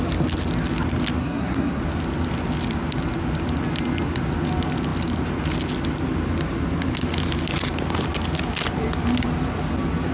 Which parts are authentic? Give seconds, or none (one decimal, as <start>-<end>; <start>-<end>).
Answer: 0.0-1.2; 1.8-10.1